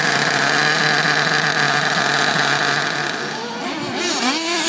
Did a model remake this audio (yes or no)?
no